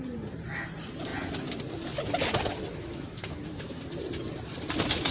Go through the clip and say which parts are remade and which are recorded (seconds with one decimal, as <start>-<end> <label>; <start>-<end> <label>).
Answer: 0.0-2.7 recorded; 2.7-3.8 remade; 3.8-5.1 recorded